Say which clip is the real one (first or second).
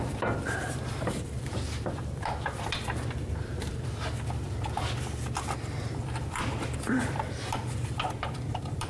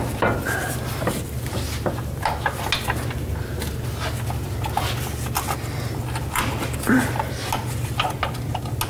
second